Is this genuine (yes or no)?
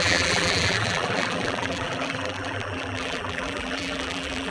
no